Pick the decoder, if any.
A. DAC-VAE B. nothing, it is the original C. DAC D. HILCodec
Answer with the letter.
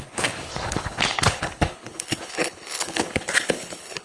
D